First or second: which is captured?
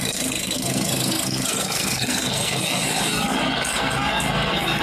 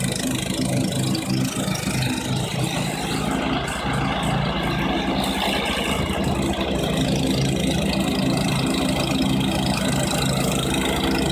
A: second